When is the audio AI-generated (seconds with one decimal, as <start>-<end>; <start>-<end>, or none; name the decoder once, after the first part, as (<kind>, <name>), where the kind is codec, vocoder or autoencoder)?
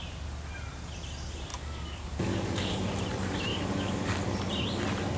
1.5-2.7 (codec, DAC); 3.5-4.2